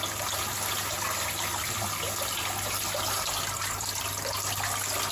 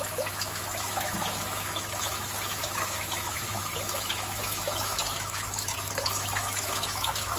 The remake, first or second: second